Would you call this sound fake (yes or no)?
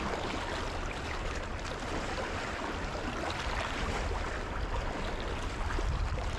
no